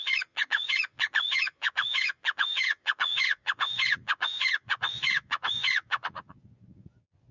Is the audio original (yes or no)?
no